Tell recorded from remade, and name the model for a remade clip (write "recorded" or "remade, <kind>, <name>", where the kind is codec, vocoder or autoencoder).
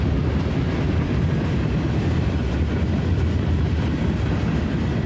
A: recorded